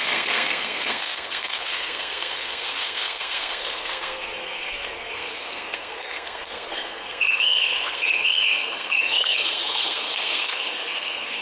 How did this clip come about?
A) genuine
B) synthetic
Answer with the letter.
B